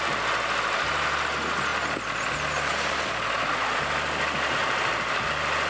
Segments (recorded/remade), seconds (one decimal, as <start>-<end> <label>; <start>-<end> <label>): 0.0-5.7 recorded